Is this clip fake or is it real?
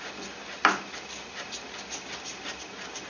real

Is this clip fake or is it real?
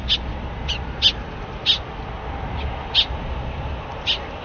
real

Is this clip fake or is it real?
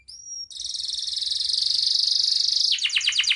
real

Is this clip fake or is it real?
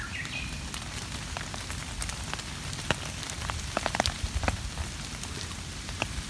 real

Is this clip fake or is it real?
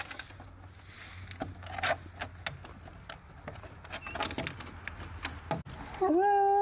real